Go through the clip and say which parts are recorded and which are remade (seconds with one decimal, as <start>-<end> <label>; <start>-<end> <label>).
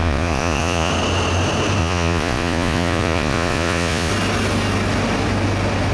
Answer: 0.0-0.9 remade; 0.9-1.8 recorded; 1.8-4.1 remade; 4.1-5.9 recorded